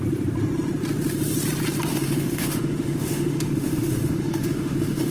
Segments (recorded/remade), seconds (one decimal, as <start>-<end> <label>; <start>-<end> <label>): 0.0-1.9 recorded; 1.9-5.1 remade